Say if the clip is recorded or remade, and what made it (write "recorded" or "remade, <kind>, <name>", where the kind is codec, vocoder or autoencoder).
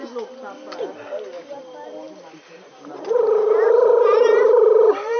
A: remade, vocoder, BigVGAN v2